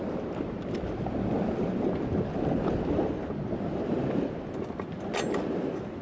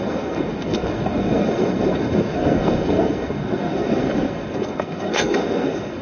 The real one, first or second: first